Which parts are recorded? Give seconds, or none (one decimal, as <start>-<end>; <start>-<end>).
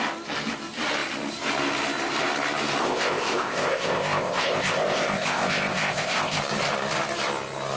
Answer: 0.0-2.8; 6.4-7.8